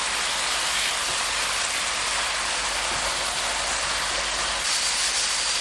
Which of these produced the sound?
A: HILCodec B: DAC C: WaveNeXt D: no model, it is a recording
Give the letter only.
D